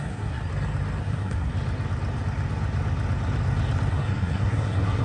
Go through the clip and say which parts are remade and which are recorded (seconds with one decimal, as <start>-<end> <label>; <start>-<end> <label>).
0.0-0.4 remade; 0.4-1.0 recorded; 1.0-1.5 remade; 1.5-3.9 recorded; 3.9-5.0 remade